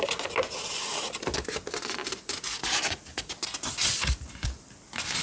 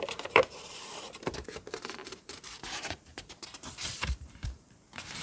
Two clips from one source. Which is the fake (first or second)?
second